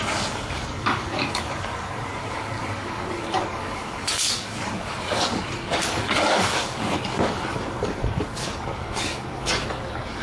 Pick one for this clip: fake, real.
fake